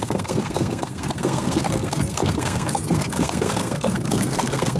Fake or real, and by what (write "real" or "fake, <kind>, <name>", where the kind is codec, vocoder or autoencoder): fake, codec, SNAC